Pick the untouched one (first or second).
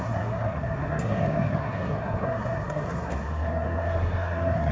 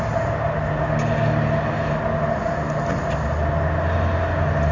second